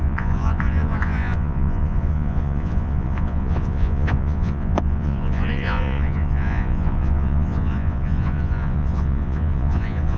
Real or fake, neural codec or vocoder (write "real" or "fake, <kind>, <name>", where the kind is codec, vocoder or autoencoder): fake, vocoder, Vocos